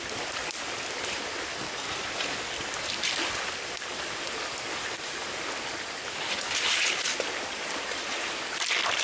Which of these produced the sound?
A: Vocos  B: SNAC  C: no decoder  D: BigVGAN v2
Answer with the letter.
C